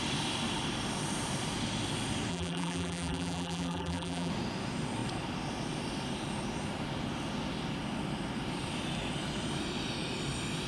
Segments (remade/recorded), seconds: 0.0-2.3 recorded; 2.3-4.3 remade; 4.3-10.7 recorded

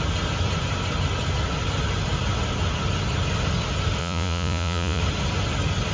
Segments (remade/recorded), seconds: 0.0-4.0 recorded; 4.0-5.0 remade; 5.0-5.9 recorded

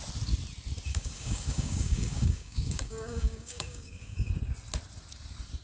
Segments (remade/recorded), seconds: 0.0-0.9 recorded; 0.9-4.3 remade; 4.3-5.6 recorded

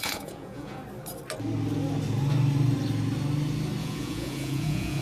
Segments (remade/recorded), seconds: 0.0-0.8 remade; 0.8-3.8 recorded; 3.8-5.0 remade